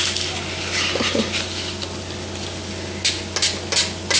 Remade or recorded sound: recorded